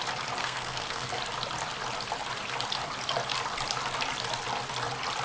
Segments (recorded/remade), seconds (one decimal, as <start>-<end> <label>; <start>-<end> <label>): 0.0-0.4 recorded; 0.4-1.1 remade; 1.1-5.2 recorded